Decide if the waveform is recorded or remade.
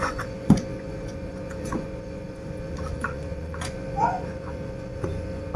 remade